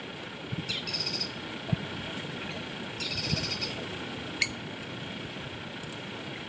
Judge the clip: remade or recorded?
recorded